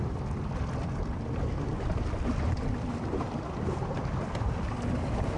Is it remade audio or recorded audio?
recorded